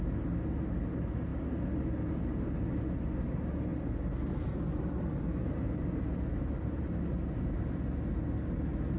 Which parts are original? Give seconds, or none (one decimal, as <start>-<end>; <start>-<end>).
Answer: 0.0-3.7; 5.4-6.1; 6.8-9.0